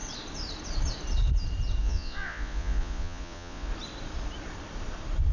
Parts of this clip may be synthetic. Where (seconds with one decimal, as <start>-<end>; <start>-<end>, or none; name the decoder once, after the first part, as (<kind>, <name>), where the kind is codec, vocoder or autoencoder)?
1.8-3.7 (vocoder, Vocos)

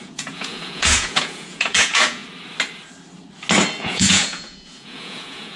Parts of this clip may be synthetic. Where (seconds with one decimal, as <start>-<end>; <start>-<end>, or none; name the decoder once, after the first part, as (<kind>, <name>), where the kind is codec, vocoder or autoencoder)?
0.0-2.2 (vocoder, Vocos); 3.8-5.6

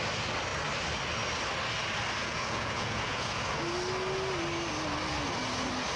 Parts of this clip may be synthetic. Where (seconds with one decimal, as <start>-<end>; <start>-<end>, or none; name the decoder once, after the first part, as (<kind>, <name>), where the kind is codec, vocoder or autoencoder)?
2.2-3.4 (vocoder, Vocos)

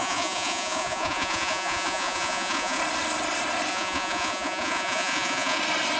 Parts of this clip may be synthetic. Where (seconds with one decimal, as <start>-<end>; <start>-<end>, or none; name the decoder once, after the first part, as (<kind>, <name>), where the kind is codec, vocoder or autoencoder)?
0.0-2.8 (vocoder, Vocos); 3.7-5.6

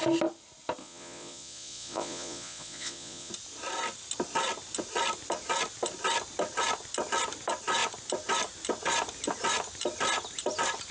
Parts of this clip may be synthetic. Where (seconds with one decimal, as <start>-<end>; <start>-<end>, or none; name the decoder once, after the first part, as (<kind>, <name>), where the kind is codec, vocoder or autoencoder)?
0.8-3.3 (vocoder, Vocos)

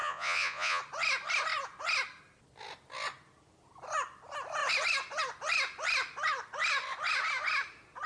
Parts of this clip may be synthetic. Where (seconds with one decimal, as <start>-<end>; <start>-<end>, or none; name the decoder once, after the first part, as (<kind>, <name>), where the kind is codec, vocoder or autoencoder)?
0.0-0.8 (vocoder, Vocos)

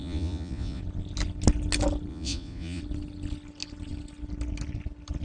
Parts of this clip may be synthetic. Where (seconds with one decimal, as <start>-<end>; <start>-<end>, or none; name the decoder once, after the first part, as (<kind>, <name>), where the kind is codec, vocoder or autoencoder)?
0.0-0.8 (vocoder, Vocos); 2.1-2.8